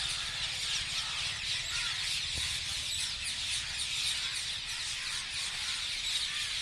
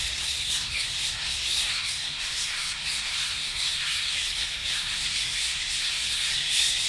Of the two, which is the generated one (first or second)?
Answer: second